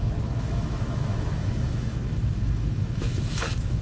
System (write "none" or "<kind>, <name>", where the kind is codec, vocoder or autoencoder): autoencoder, DAC-VAE